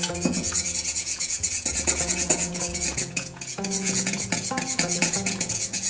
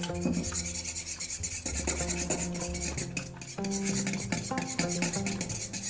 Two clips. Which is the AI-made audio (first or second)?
first